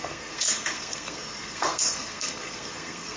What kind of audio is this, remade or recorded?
remade